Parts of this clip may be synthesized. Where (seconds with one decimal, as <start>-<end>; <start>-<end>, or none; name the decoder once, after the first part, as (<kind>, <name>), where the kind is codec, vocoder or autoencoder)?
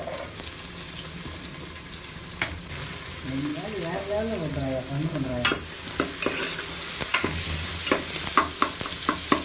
7.1-7.7 (codec, DAC)